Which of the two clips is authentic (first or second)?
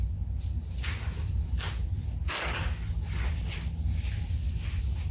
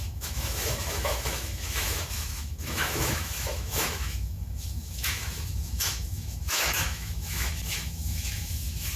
first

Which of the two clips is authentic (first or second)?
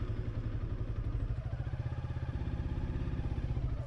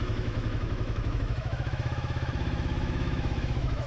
first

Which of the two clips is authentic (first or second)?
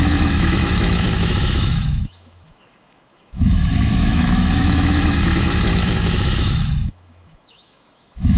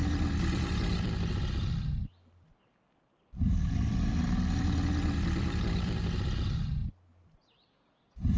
second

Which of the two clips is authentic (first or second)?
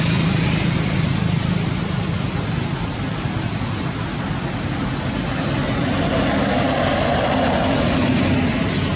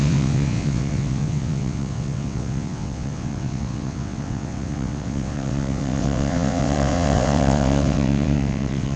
first